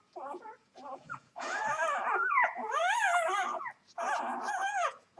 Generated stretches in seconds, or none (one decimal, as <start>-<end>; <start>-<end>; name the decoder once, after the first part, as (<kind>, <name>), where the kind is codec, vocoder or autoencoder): 0.0-1.6 (vocoder, Vocos); 2.3-2.8; 4.5-5.2